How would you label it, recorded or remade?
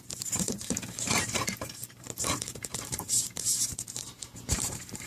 remade